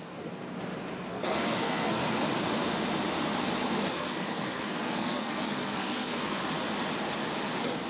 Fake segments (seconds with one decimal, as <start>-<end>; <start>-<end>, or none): 0.0-0.5; 1.1-2.0; 3.9-6.4